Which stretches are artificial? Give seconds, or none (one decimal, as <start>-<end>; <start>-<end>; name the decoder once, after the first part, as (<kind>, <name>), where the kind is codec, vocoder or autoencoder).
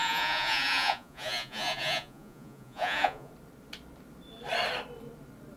0.0-3.3 (vocoder, Vocos)